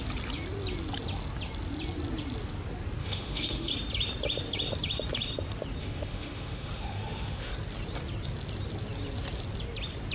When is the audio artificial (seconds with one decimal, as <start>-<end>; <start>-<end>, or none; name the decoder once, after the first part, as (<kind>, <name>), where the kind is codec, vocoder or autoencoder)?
3.0-3.7 (autoencoder, DAC-VAE); 5.8-7.5